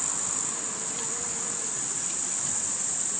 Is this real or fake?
real